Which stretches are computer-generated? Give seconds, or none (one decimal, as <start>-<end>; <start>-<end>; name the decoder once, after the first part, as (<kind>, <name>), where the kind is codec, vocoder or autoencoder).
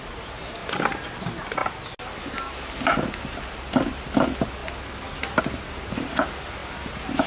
none